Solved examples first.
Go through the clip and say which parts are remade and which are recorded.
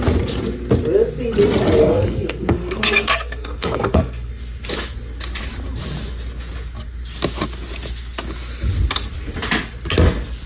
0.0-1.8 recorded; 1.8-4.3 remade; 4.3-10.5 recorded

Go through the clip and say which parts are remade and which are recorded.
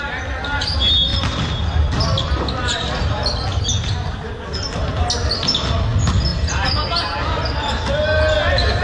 0.0-8.8 recorded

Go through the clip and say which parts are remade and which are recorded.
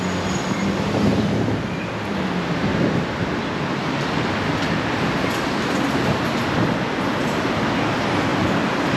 0.0-1.1 recorded; 1.1-1.9 remade; 1.9-2.7 recorded; 2.7-4.1 remade; 4.1-9.0 recorded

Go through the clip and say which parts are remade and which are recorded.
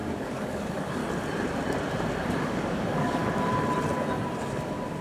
0.0-1.0 remade; 1.0-2.4 recorded; 2.4-3.2 remade; 3.2-4.4 recorded; 4.4-5.0 remade